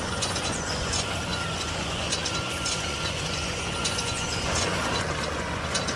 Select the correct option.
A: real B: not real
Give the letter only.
B